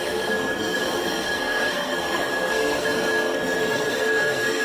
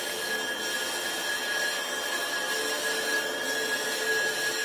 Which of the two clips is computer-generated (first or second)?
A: first